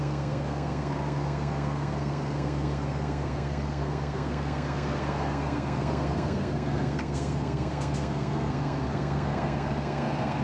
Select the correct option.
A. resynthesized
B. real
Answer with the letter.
A